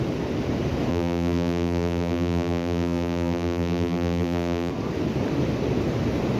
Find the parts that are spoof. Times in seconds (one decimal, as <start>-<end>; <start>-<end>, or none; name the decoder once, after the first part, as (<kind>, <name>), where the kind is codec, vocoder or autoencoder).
0.9-4.7 (vocoder, BigVGAN v2)